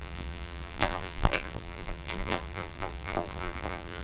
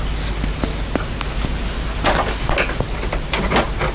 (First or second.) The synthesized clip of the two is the first